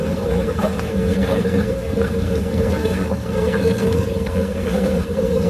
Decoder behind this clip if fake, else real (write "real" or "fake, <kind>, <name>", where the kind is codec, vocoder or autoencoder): fake, codec, SNAC